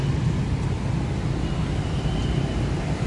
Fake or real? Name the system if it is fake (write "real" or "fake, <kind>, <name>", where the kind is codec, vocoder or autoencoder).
real